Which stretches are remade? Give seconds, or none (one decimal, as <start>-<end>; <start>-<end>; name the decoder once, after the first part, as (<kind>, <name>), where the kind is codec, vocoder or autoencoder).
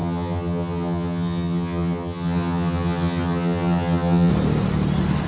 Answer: 0.0-4.3 (vocoder, HiFi-GAN)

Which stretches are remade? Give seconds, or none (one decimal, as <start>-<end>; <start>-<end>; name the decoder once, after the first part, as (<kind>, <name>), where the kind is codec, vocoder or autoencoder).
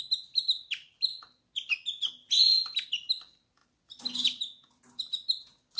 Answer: none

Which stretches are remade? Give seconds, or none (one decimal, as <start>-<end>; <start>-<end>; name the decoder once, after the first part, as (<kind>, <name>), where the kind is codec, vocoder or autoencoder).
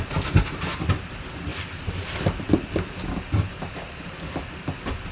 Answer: none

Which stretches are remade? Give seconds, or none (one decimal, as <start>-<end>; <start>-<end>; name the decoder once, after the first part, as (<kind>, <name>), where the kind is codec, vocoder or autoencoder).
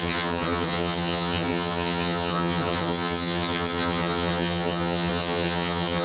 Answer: 0.0-6.0 (vocoder, HiFi-GAN)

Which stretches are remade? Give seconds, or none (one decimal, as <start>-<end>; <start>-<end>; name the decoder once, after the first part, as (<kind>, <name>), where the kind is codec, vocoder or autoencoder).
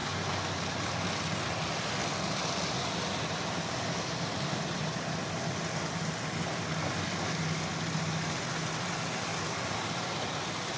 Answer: none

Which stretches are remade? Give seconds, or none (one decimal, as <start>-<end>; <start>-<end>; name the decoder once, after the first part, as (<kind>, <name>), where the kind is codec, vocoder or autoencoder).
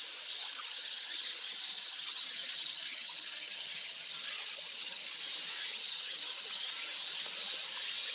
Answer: 0.4-5.2 (vocoder, HiFi-GAN); 5.7-6.7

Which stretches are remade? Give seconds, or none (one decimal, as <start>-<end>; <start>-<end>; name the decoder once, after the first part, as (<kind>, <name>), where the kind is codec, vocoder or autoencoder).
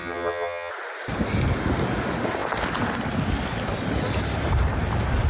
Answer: 0.0-0.7 (vocoder, HiFi-GAN)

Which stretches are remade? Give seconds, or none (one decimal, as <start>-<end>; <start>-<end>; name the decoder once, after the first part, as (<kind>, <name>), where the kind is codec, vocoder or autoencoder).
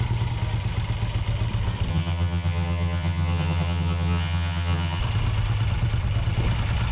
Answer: 1.9-5.0 (vocoder, HiFi-GAN)